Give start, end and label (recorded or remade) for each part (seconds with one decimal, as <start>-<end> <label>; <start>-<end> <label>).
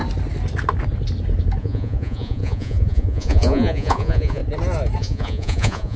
0.0-1.6 recorded; 1.6-4.4 remade; 4.4-5.0 recorded; 5.0-6.0 remade